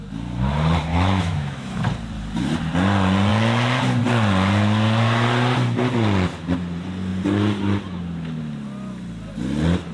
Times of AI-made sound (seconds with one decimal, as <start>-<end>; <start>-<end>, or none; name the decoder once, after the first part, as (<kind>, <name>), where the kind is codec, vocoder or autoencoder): 0.9-1.8 (autoencoder, DAC-VAE)